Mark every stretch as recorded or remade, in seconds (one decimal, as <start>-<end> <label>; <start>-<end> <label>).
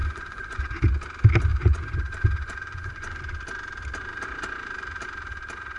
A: 0.0-0.6 remade; 0.6-1.5 recorded; 1.5-3.2 remade; 3.2-5.8 recorded